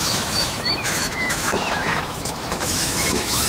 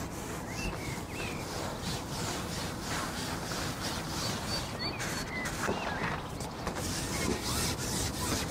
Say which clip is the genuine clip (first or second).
second